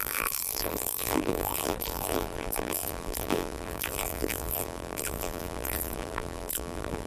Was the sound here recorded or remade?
remade